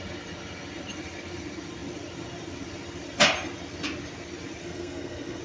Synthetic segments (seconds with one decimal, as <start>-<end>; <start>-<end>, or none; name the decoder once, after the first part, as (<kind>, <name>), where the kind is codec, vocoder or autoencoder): 4.6-5.4 (codec, SNAC)